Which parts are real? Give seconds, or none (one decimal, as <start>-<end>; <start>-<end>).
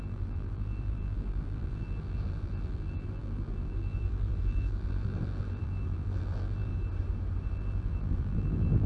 6.7-7.5